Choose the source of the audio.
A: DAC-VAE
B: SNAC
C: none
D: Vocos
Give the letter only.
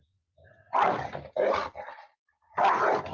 C